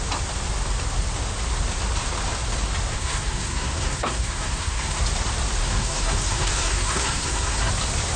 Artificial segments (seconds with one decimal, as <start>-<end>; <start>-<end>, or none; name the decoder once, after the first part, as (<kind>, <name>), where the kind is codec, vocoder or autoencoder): 2.9-5.0 (codec, SNAC); 5.6-7.7